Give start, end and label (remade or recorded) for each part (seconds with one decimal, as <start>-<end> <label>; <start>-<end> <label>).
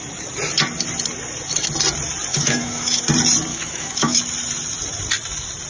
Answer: 0.0-2.3 recorded; 2.3-3.0 remade; 3.0-3.5 recorded; 3.5-4.2 remade; 4.2-5.7 recorded